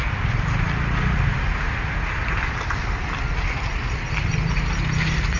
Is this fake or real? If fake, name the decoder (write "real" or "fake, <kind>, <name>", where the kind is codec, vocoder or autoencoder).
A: real